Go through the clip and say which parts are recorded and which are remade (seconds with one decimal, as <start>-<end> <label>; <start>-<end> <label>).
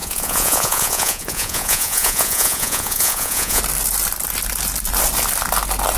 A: 0.0-3.6 remade; 3.6-6.0 recorded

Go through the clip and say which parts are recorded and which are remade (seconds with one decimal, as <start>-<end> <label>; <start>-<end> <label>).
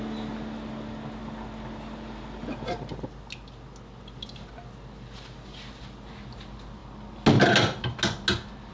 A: 0.0-8.7 recorded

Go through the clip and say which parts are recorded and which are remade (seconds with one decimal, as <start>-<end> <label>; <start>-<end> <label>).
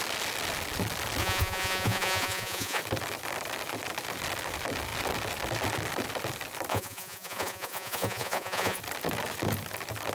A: 0.0-1.2 recorded; 1.2-2.8 remade; 2.8-6.7 recorded; 6.7-8.8 remade; 8.8-10.1 recorded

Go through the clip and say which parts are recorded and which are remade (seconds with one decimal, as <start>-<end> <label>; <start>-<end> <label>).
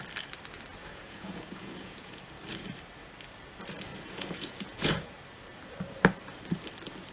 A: 0.0-0.8 recorded; 0.8-2.2 remade; 2.2-3.9 recorded; 3.9-5.1 remade; 5.1-7.1 recorded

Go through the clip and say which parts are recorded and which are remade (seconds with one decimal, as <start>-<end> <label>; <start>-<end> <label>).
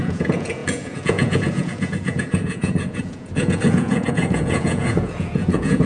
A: 0.0-5.9 remade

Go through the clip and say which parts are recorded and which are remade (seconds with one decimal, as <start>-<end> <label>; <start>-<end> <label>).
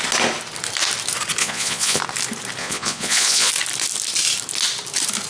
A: 0.0-1.4 recorded; 1.4-2.0 remade; 2.0-2.6 recorded; 2.6-3.5 remade; 3.5-5.3 recorded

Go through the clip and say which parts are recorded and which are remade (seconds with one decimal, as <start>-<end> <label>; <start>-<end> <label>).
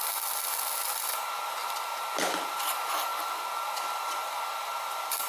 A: 0.0-5.3 recorded